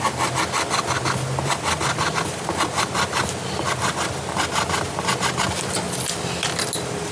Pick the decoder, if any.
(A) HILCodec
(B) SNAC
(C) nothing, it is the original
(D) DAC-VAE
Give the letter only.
C